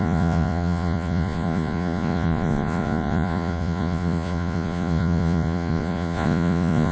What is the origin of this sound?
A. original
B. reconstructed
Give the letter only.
B